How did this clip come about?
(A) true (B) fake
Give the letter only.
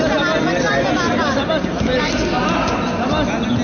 A